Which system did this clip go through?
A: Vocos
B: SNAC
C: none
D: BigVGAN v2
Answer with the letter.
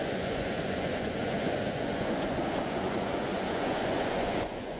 A